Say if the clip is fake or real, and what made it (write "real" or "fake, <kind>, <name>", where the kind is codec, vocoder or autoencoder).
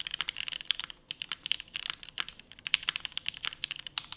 real